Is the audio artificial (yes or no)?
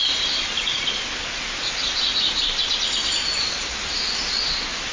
no